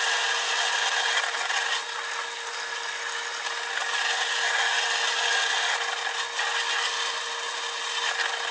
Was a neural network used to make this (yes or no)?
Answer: no